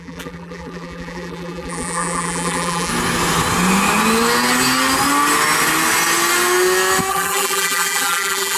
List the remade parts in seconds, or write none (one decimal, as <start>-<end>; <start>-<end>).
0.0-2.9; 7.1-8.6